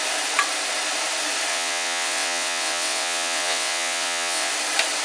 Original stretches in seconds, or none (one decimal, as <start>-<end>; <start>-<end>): 0.0-1.5; 4.5-5.0